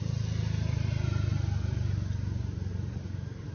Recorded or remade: recorded